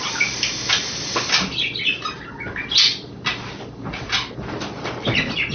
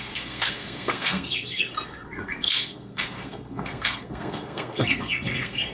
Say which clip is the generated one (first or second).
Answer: second